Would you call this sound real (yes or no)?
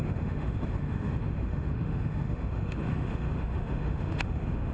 no